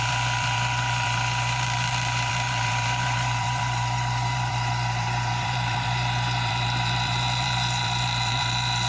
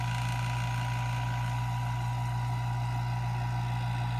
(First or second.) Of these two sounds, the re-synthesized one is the first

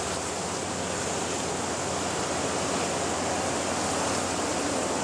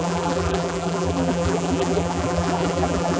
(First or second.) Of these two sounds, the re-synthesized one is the second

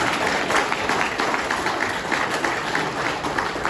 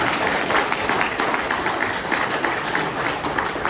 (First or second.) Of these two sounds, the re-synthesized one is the second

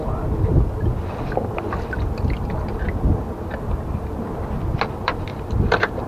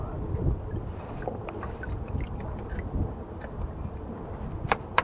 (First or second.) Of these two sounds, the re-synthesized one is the second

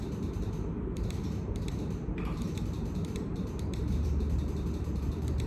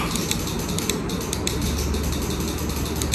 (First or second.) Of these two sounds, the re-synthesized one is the first